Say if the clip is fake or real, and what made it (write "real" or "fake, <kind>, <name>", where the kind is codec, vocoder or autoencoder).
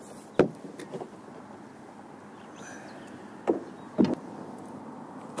real